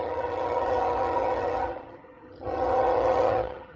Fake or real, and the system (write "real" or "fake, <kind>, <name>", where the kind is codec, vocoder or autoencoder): fake, vocoder, HiFi-GAN